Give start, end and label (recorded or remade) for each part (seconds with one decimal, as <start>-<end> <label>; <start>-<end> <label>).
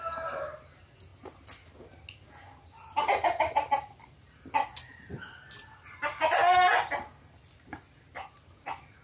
0.0-9.0 recorded